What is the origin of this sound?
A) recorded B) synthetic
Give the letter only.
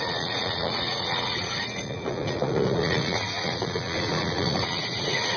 B